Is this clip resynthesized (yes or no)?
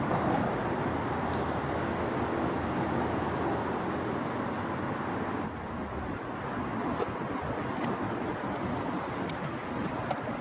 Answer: no